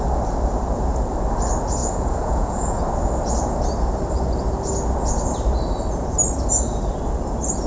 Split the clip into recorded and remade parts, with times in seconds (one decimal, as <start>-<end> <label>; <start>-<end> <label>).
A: 0.0-1.8 recorded; 1.8-2.8 remade; 2.8-7.7 recorded